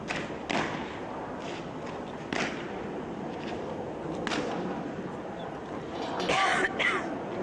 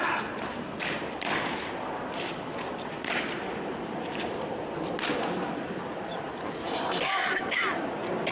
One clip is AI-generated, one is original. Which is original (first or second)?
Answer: first